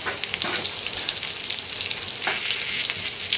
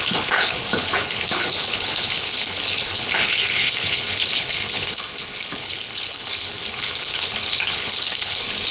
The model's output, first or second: second